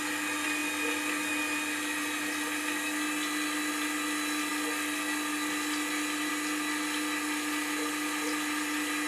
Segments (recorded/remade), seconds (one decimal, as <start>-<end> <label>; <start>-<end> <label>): 0.0-9.1 recorded